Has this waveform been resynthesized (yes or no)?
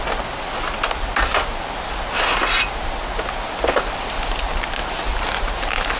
no